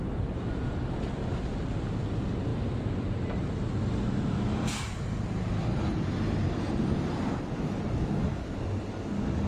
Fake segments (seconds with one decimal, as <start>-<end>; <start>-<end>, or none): none